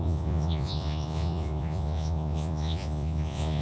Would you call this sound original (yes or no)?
no